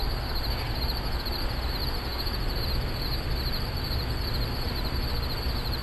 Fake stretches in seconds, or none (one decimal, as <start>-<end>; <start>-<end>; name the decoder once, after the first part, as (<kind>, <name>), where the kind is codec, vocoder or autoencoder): none